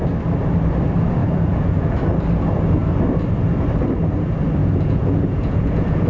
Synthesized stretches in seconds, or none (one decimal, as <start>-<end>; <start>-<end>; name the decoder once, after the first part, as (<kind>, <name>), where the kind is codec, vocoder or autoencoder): 1.2-2.0 (vocoder, Vocos); 4.6-6.1